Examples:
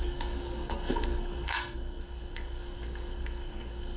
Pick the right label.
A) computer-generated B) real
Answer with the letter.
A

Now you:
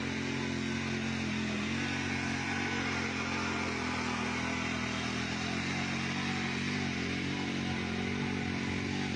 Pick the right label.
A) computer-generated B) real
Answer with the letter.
B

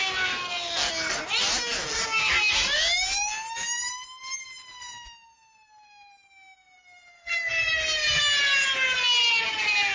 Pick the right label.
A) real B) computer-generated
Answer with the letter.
A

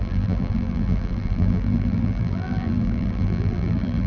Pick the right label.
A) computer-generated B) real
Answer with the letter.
A